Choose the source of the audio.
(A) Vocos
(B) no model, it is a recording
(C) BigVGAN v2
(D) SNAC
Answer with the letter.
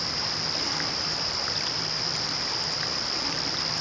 C